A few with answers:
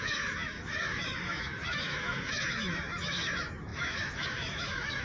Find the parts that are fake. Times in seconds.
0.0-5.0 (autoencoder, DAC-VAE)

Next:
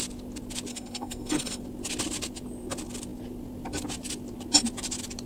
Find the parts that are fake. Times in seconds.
0.7-1.6 (codec, SNAC)

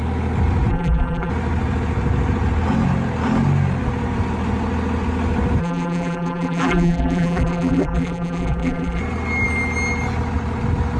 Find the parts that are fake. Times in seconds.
0.7-1.3 (vocoder, BigVGAN v2); 5.6-9.0